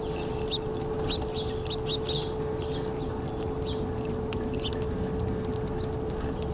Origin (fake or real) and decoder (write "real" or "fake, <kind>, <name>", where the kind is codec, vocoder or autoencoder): real